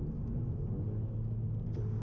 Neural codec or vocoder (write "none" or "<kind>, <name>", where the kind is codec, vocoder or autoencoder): none